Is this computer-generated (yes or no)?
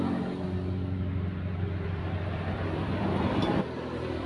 yes